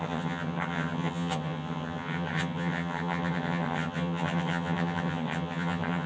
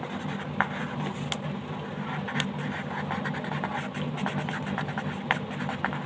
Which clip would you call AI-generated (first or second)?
first